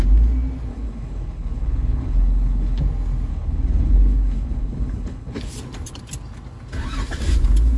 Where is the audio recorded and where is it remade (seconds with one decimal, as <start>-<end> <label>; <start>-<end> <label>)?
0.0-0.7 recorded; 0.7-2.8 remade; 2.8-3.3 recorded; 3.3-5.5 remade; 5.5-7.8 recorded